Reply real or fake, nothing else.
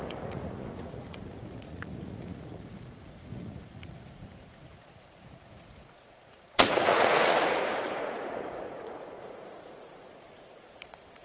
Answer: fake